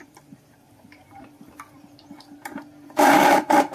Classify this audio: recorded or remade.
remade